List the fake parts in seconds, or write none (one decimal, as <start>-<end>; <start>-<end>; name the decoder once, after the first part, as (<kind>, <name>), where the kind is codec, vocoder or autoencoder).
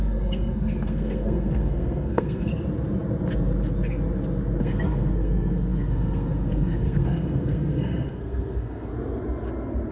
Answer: 0.0-2.5 (codec, SNAC); 4.6-8.9